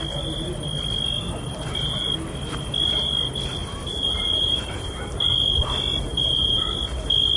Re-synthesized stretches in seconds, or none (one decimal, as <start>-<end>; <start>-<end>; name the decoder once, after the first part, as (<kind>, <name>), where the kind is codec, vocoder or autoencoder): 3.6-5.0 (vocoder, BigVGAN v2); 6.1-6.6